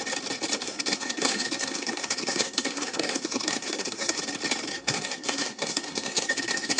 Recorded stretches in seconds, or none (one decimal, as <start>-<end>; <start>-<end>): 0.0-0.6; 4.2-4.7